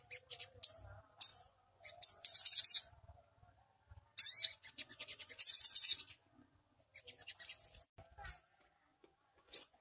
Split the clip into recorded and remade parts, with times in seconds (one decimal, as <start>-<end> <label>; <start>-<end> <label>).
0.0-1.3 recorded; 1.3-2.9 remade; 2.9-4.5 recorded; 4.5-6.8 remade; 6.8-8.9 recorded; 8.9-9.8 remade